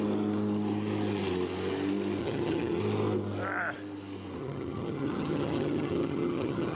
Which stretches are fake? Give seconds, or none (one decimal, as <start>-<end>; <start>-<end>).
2.2-2.8; 4.4-6.8